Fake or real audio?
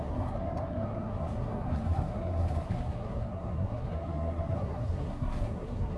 fake